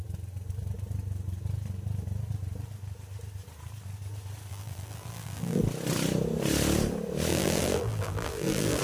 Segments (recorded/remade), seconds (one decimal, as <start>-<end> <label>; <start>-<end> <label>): 0.0-4.5 recorded; 4.5-5.6 remade; 5.6-7.3 recorded; 7.3-8.8 remade